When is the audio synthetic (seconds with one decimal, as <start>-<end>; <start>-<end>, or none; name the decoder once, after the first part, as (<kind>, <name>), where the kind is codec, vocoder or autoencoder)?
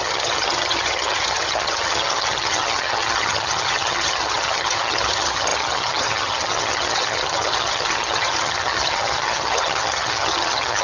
0.0-10.8 (vocoder, HiFi-GAN)